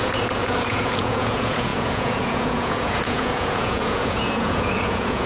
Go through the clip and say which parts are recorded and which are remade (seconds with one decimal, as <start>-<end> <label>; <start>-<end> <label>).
0.0-5.3 remade